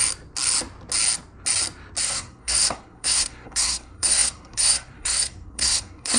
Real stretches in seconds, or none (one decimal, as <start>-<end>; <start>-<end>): 0.0-2.0

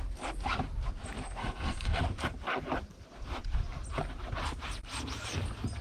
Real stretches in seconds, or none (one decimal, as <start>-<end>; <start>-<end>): 0.0-1.4; 2.0-5.8

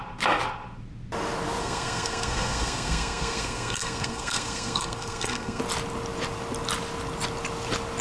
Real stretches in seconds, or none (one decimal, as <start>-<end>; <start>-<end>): 0.0-1.6; 5.6-8.0

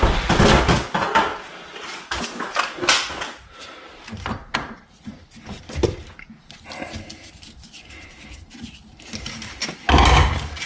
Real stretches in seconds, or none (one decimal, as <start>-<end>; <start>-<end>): 0.0-1.3; 1.9-4.4; 5.8-10.7

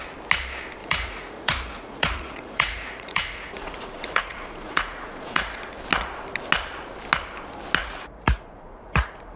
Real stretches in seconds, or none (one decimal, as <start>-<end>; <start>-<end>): 0.0-0.8; 5.7-7.8

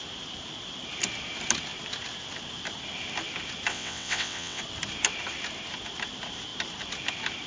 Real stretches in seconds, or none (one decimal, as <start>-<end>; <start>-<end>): 0.0-3.7; 4.6-7.5